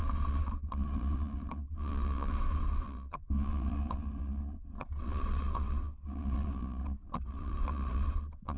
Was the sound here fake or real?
fake